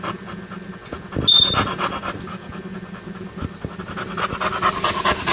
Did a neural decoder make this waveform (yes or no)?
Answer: no